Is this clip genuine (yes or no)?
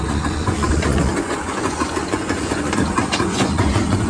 no